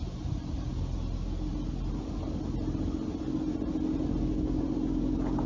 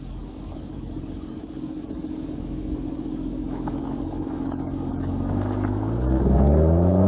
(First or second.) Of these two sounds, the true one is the first